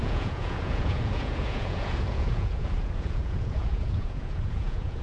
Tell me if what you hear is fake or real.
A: fake